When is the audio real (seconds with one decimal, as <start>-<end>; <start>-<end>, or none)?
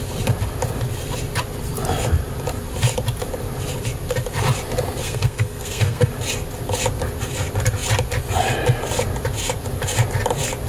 0.0-5.0; 6.1-10.7